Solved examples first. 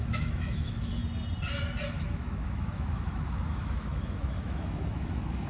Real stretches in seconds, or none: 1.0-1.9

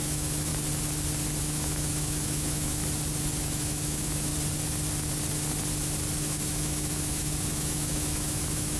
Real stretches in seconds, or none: 0.5-1.4; 2.8-3.4; 4.3-6.2

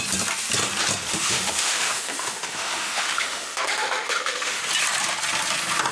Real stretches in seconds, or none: 0.0-1.1; 4.6-5.9